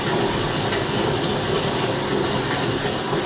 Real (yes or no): yes